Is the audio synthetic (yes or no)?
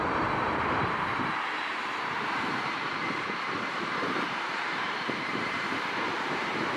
yes